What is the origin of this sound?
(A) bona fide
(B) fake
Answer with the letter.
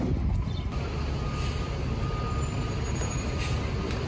A